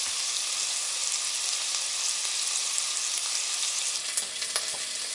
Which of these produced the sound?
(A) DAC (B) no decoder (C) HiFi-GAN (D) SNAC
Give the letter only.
B